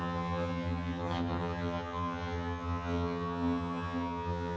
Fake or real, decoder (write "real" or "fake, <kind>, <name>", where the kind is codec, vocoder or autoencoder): fake, vocoder, HiFi-GAN